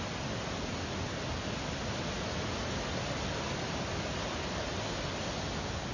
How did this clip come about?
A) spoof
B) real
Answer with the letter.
B